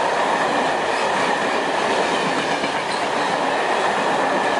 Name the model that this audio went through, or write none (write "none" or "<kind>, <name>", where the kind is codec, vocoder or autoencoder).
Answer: none